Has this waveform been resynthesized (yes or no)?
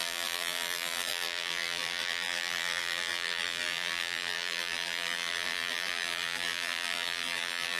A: yes